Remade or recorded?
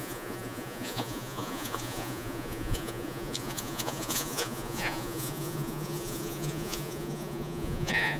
remade